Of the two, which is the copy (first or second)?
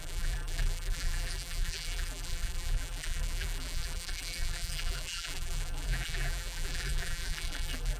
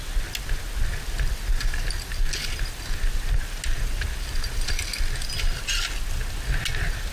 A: first